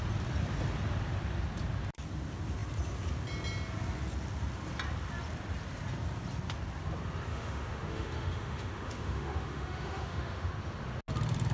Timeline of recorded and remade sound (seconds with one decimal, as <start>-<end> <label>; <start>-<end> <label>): 0.0-7.3 recorded; 7.3-10.5 remade; 10.5-11.5 recorded